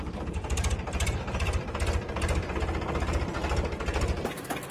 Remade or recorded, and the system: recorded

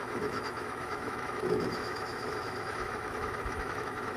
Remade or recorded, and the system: remade, autoencoder, DAC-VAE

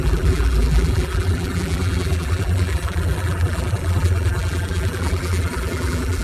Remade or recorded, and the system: remade, vocoder, BigVGAN v2